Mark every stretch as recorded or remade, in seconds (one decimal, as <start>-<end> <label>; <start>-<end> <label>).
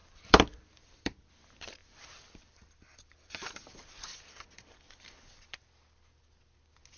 0.0-1.3 remade; 1.3-1.8 recorded; 1.8-5.6 remade; 5.6-7.0 recorded